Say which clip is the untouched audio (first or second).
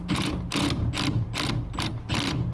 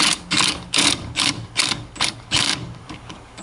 first